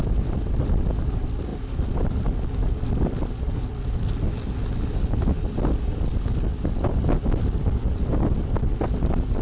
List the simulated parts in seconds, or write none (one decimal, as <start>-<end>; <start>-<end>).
none